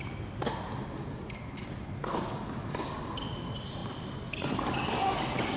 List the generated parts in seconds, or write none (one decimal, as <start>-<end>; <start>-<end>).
none